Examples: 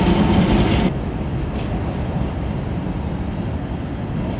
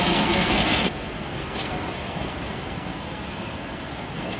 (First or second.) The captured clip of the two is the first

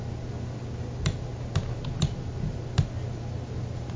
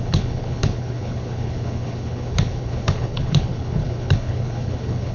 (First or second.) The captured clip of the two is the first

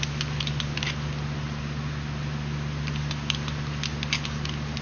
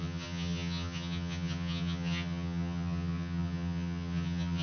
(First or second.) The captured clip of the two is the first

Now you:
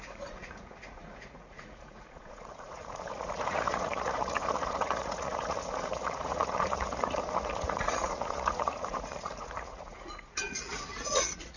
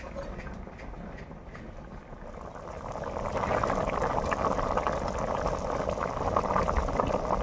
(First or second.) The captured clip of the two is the second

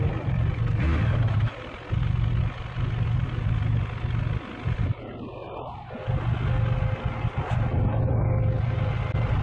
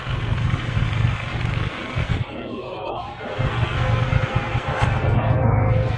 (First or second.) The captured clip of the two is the first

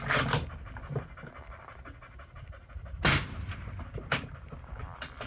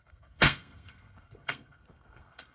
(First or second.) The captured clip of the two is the first